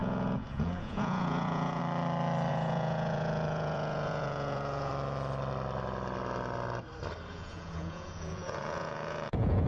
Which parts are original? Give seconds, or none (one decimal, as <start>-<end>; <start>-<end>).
1.8-2.5; 4.9-7.3